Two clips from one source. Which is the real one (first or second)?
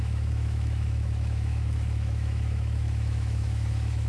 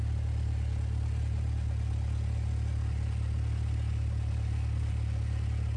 second